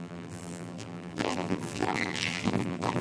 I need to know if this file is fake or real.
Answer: fake